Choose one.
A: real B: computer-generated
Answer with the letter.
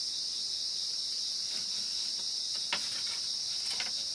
A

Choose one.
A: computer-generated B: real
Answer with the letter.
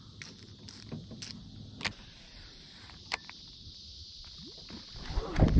B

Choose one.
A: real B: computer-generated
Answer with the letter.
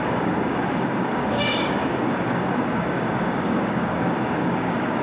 B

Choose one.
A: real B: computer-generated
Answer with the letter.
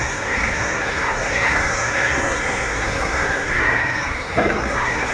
B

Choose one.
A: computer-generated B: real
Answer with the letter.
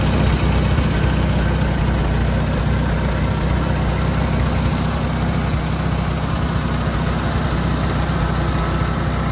B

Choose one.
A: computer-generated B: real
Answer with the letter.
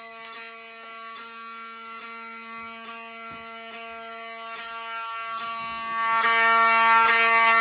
B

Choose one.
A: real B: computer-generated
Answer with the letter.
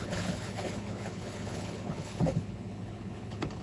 B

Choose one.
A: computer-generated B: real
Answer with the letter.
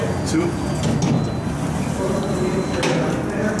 B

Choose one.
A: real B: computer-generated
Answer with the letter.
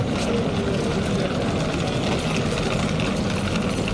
A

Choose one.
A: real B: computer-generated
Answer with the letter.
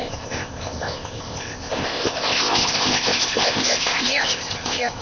B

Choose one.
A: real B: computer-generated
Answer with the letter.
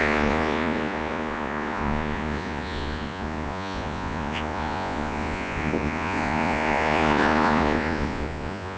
B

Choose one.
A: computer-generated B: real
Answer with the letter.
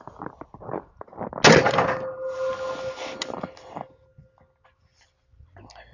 B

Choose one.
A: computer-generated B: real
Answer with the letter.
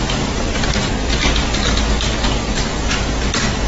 B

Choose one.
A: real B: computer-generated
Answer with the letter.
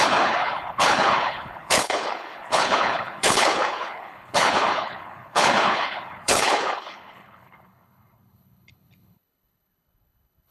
B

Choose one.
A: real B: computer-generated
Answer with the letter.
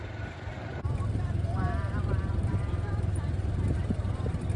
B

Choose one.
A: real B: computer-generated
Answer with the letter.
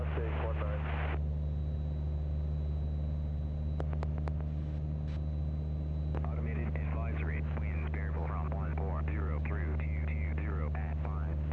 A